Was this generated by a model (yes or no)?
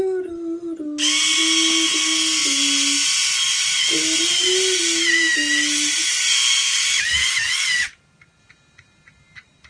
no